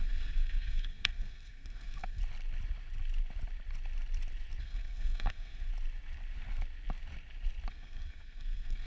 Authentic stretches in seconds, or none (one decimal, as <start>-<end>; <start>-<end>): 2.2-4.6; 5.7-7.7